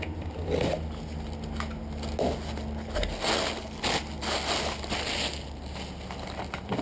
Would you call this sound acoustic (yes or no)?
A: yes